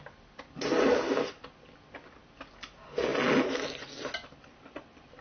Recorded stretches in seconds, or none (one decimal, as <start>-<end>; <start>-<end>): 0.0-5.2